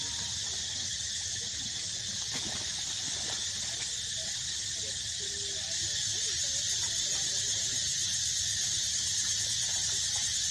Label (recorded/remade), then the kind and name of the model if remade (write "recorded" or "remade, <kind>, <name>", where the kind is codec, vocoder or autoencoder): recorded